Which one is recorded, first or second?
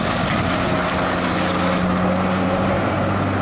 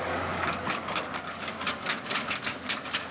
first